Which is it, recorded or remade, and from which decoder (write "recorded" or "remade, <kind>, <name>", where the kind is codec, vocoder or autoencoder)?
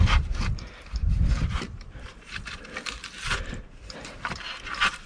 remade, vocoder, BigVGAN v2